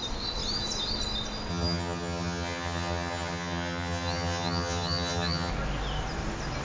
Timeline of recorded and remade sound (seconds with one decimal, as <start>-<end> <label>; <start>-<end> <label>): 0.0-1.5 recorded; 1.5-5.5 remade; 5.5-6.6 recorded